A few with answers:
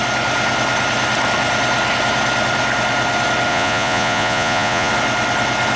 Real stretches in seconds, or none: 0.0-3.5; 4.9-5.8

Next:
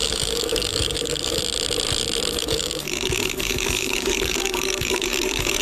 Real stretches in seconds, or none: 1.4-2.4

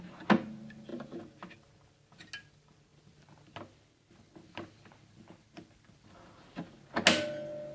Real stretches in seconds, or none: 0.0-7.7

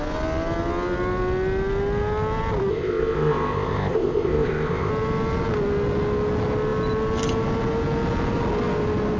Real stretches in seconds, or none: 0.0-2.7; 4.9-9.2

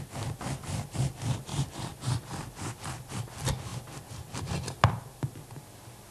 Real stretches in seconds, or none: 0.0-1.5; 3.1-3.7; 4.4-6.1

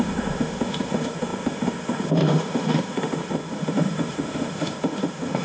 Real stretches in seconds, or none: none

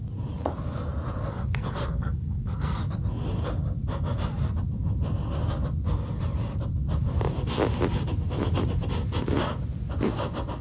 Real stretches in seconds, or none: 0.0-1.3; 2.8-10.6

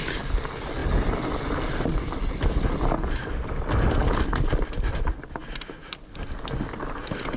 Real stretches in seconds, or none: 0.0-7.4